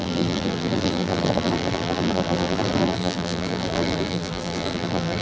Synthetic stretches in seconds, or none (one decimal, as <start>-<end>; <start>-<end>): 0.0-5.2